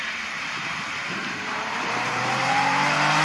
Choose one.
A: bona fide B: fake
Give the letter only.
B